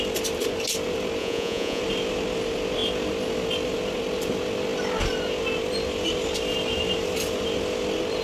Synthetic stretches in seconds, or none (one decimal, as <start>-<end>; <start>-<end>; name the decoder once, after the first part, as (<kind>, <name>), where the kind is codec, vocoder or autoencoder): 1.2-1.8 (vocoder, Vocos)